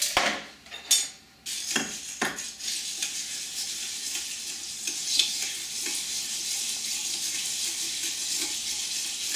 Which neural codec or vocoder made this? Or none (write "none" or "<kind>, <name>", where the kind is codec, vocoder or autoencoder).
none